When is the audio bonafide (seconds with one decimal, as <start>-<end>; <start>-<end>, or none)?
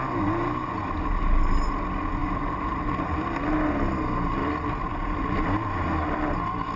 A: 0.0-2.2; 2.8-6.8